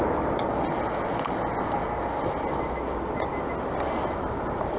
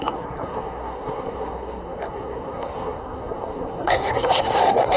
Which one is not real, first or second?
second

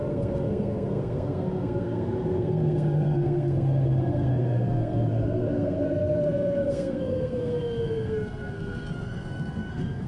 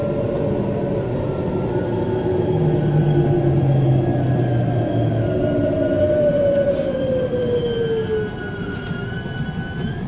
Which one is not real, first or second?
first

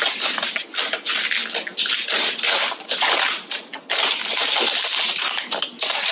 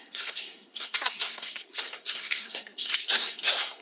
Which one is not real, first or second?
second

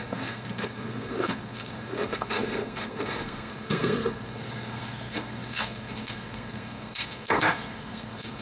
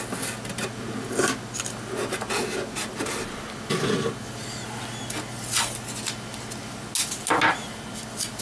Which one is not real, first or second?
first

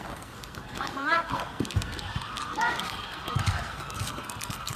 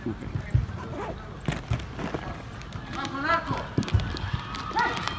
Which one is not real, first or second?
first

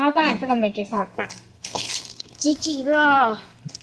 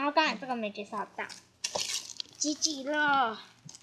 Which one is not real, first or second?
first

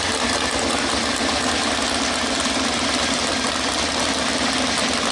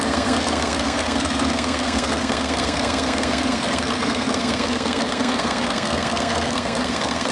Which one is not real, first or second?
second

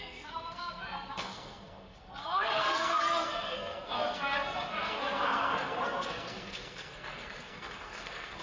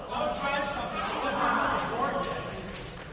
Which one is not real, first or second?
first